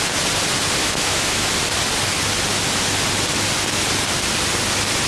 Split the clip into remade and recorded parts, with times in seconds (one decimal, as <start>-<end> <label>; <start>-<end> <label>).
0.0-0.8 recorded; 0.8-1.5 remade; 1.5-5.1 recorded